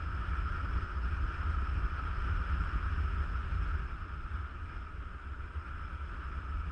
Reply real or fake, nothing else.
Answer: real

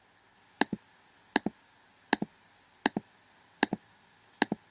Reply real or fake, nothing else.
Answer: real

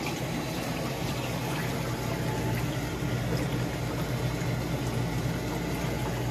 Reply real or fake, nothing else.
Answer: real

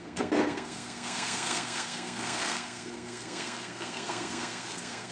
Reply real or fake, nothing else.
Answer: fake